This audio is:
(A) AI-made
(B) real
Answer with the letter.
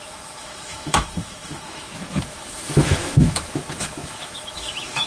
A